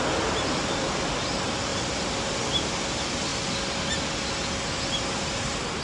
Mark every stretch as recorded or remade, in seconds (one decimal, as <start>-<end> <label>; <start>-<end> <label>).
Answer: 0.0-5.8 recorded